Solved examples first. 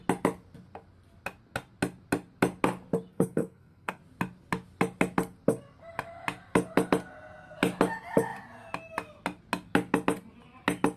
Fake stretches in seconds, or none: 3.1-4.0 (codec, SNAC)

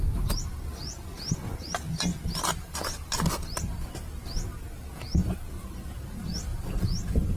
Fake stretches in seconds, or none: none

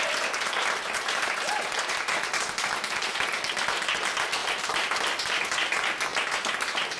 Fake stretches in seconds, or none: 4.4-5.4 (vocoder, BigVGAN v2)

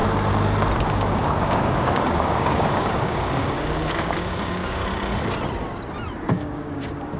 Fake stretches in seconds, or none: 0.8-4.8 (codec, DAC); 6.3-7.2

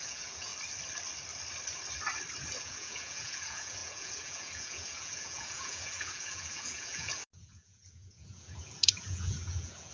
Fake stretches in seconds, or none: 0.0-0.5 (vocoder, Vocos); 2.6-9.9

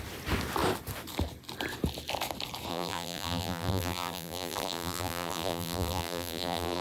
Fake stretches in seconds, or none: 2.7-6.8 (vocoder, BigVGAN v2)

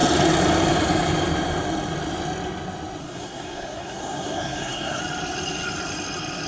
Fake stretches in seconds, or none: 3.0-5.0 (codec, SNAC)